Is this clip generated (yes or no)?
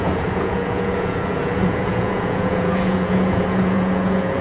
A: yes